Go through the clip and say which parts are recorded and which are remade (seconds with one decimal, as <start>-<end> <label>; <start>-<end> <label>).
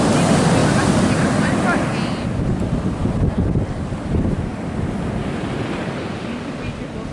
0.0-1.9 recorded; 1.9-2.4 remade; 2.4-3.0 recorded; 3.0-4.1 remade; 4.1-4.5 recorded; 4.5-5.6 remade; 5.6-7.1 recorded